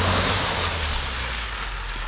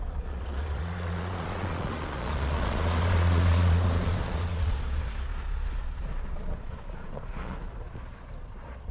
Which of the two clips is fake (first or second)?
second